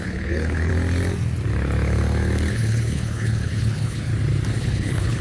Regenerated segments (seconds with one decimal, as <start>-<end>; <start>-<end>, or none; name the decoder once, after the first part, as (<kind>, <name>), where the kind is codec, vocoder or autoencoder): 0.0-0.7 (codec, HILCodec); 2.5-4.1; 4.6-5.2